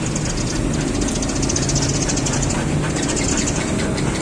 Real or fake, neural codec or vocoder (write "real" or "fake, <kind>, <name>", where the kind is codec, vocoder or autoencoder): real